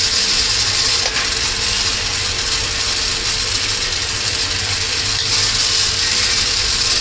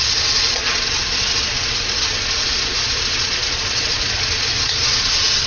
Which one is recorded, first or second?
first